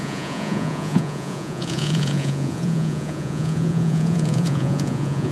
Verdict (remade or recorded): remade